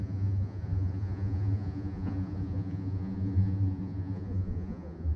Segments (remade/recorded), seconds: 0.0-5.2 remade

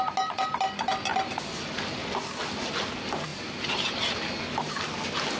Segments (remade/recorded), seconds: 0.0-3.3 recorded; 3.3-4.0 remade; 4.0-5.4 recorded

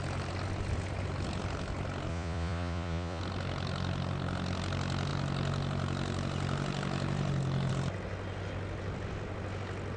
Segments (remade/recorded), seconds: 0.0-2.1 recorded; 2.1-3.2 remade; 3.2-10.0 recorded

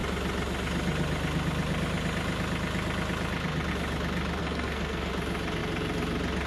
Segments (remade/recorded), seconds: 0.0-4.4 recorded; 4.4-5.1 remade; 5.1-6.5 recorded